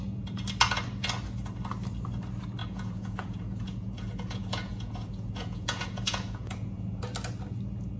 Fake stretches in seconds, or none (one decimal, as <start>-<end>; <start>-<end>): 2.6-7.0